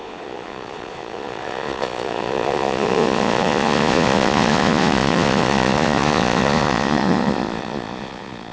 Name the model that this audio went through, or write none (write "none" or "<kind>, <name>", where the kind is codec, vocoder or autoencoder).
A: vocoder, Vocos